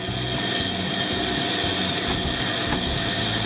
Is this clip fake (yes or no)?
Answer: no